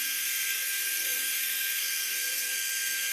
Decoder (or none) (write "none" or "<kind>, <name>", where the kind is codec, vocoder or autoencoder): codec, SNAC